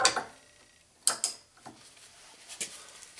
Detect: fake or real real